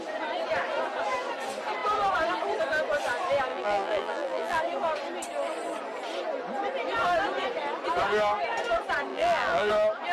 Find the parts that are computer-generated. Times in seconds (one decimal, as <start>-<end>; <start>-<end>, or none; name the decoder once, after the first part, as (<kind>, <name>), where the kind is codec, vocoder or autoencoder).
3.5-4.6 (vocoder, BigVGAN v2); 9.1-9.7